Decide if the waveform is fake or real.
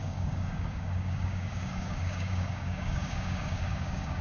fake